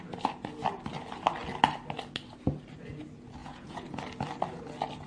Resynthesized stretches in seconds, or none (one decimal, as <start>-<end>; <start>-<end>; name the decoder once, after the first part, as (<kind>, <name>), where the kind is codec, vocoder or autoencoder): 3.4-4.0 (vocoder, Vocos)